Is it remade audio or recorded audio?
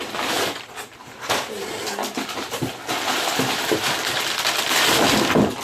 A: remade